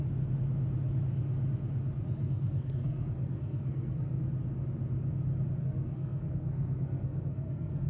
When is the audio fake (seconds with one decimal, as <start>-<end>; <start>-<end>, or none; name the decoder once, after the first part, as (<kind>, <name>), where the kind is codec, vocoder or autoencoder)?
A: 2.2-4.2 (codec, SNAC); 5.6-7.9